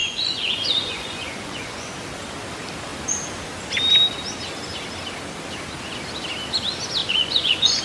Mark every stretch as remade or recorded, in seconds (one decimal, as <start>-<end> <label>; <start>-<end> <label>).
0.0-1.9 remade; 1.9-7.0 recorded; 7.0-7.8 remade